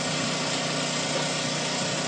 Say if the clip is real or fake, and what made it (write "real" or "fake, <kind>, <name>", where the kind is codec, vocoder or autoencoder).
real